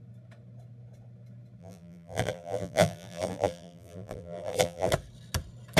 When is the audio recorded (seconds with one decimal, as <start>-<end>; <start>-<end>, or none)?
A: 0.0-1.6; 4.9-5.8